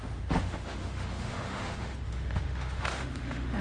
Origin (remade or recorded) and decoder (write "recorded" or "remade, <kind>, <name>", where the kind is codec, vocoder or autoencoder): remade, autoencoder, DAC-VAE